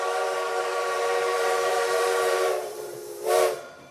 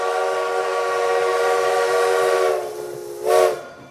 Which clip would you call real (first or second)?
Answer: second